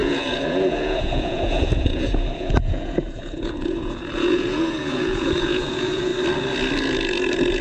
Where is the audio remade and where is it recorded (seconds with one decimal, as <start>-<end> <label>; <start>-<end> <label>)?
0.0-6.1 remade; 6.1-7.6 recorded